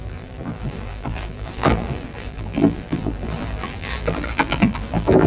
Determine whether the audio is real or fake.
fake